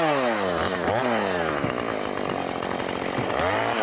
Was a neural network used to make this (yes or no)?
no